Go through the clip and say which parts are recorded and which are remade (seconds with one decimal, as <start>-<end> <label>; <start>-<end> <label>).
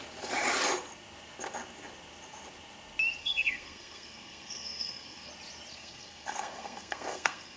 0.0-3.2 recorded; 3.2-5.3 remade; 5.3-5.7 recorded; 5.7-7.6 remade